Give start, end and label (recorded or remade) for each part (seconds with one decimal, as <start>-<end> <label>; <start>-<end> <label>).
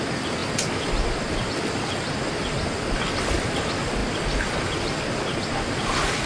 0.0-6.3 recorded